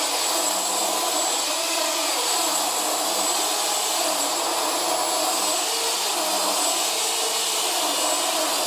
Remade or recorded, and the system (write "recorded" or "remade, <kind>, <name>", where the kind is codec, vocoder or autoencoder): recorded